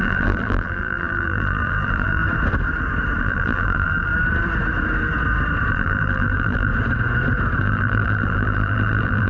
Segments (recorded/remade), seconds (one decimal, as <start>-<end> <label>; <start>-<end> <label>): 0.0-2.2 remade; 2.2-3.2 recorded; 3.2-4.1 remade; 4.1-5.7 recorded; 5.7-6.7 remade; 6.7-7.6 recorded; 7.6-9.3 remade